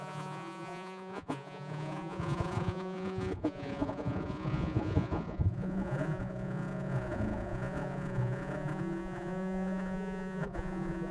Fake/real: fake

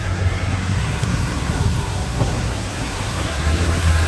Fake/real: fake